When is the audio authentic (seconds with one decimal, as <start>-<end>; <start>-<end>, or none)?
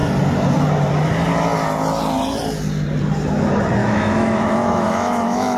0.0-3.8